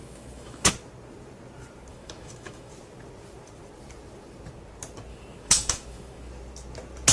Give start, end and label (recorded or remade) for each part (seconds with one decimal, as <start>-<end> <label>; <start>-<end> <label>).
0.0-0.7 remade; 0.7-1.9 recorded; 1.9-2.7 remade; 2.7-5.1 recorded; 5.1-6.3 remade; 6.3-7.1 recorded